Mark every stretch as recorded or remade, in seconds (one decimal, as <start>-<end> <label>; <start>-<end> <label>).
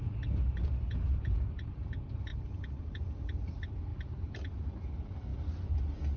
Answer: 0.0-6.2 recorded